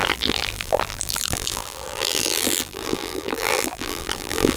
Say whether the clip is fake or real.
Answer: fake